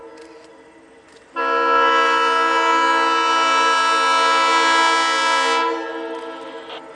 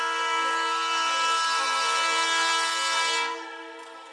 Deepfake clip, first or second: second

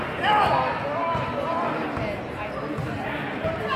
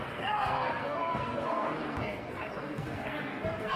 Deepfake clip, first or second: second